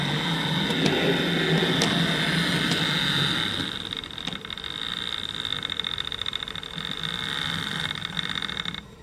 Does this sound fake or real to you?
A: real